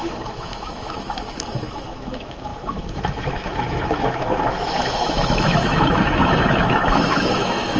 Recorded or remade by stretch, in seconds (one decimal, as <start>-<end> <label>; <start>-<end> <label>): 0.0-7.8 remade